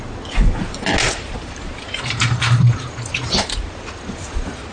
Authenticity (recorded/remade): recorded